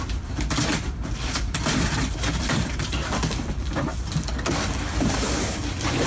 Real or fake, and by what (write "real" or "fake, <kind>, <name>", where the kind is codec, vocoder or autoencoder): fake, vocoder, BigVGAN v2